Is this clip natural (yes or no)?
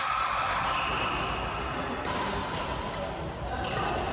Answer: yes